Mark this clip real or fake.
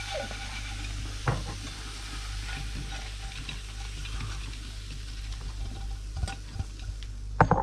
real